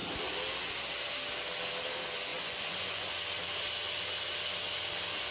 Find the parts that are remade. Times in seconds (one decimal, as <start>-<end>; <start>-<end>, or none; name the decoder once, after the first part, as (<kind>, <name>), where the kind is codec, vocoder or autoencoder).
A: 2.3-3.1 (vocoder, Vocos)